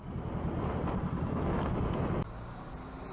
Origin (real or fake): real